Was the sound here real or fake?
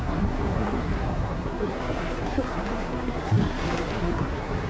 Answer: fake